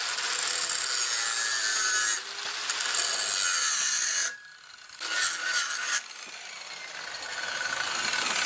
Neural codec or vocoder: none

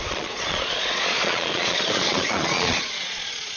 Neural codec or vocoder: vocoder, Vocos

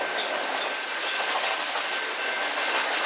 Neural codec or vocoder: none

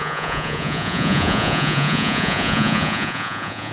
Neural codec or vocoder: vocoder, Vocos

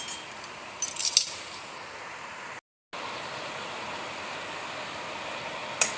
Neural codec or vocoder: none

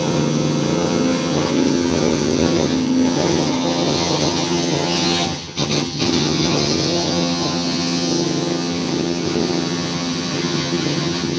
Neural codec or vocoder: vocoder, HiFi-GAN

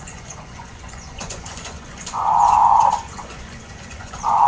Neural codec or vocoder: vocoder, Vocos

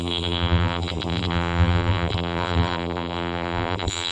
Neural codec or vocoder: vocoder, BigVGAN v2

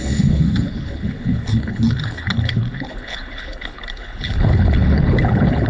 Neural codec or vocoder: codec, HILCodec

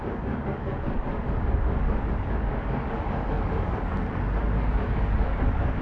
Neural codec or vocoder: codec, DAC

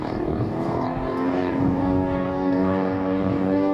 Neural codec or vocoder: codec, DAC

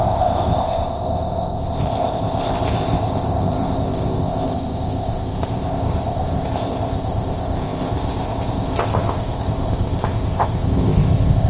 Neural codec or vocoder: codec, ZipCodec